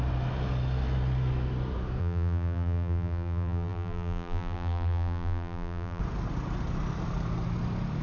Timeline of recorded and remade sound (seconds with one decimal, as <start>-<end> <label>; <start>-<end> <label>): 0.0-2.0 recorded; 2.0-6.0 remade; 6.0-8.0 recorded